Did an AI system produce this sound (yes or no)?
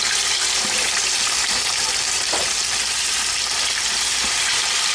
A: yes